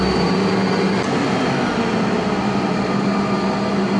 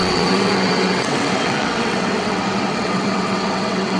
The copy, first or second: second